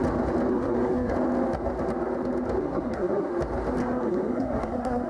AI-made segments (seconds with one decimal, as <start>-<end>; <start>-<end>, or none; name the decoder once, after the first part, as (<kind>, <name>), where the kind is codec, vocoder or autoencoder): 0.5-1.1 (codec, SNAC); 2.6-3.3; 3.8-5.1